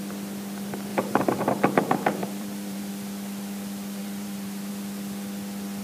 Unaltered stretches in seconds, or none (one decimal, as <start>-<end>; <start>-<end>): 0.0-0.9; 1.4-2.2; 2.9-4.0; 4.7-5.8